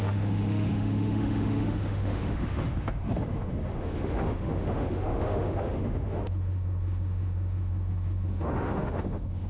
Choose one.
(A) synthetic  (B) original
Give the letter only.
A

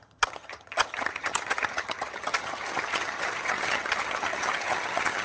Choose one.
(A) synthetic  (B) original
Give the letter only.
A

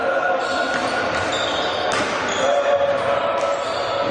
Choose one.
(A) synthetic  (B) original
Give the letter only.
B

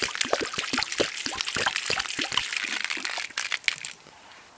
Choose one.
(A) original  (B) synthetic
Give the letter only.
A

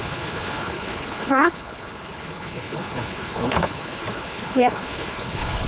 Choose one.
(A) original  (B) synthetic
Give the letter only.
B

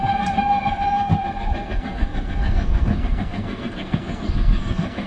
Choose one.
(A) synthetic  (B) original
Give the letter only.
A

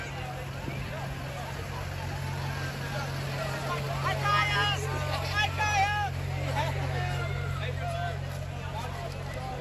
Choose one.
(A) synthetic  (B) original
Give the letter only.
B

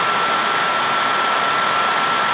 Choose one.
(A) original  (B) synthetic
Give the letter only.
A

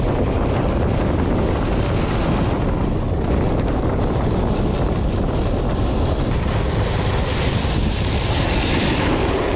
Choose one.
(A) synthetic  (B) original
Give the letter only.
B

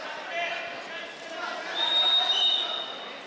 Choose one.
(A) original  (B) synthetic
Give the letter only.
A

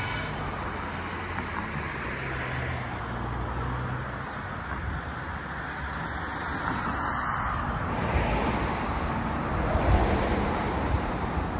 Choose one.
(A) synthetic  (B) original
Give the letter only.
B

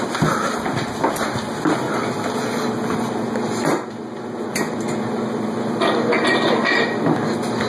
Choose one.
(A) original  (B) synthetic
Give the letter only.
A